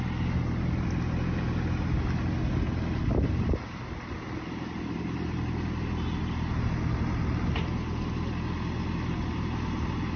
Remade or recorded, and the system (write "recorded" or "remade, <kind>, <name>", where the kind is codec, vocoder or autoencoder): recorded